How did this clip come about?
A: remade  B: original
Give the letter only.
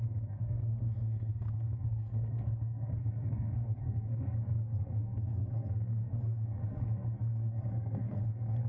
A